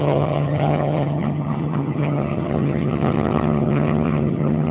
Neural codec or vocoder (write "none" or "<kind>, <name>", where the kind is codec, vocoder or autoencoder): vocoder, HiFi-GAN